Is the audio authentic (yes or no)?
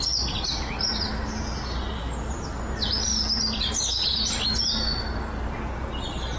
yes